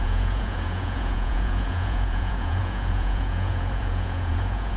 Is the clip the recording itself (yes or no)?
no